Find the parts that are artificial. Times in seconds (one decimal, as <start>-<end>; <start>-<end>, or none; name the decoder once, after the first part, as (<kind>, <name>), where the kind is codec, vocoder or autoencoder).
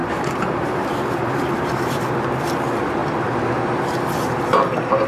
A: 0.0-2.3 (vocoder, BigVGAN v2)